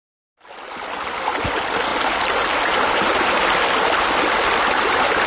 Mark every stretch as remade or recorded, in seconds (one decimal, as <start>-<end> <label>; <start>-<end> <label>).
0.0-5.3 recorded